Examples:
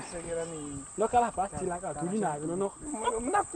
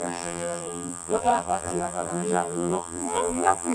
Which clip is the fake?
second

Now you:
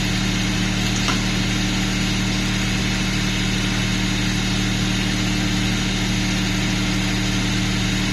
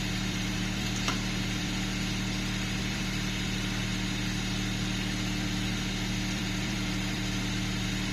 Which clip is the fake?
second